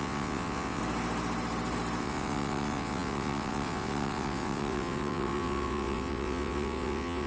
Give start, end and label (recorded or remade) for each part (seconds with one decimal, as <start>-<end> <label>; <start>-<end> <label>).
0.0-0.8 remade; 0.8-2.0 recorded; 2.0-7.3 remade